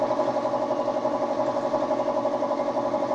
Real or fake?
real